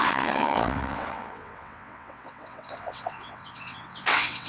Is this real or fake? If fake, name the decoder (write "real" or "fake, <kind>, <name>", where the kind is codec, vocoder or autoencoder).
fake, vocoder, WaveNeXt